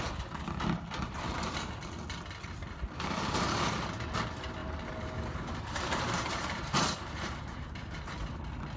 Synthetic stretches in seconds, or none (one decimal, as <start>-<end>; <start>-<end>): 4.6-8.4